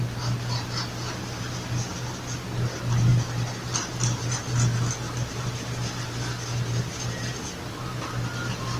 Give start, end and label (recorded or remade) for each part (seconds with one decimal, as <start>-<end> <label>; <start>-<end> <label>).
0.0-8.8 recorded